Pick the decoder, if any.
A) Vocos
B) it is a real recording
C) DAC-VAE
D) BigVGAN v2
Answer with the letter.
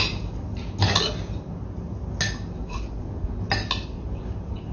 B